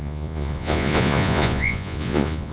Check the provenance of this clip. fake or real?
fake